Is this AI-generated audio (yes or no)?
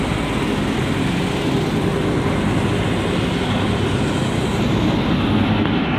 no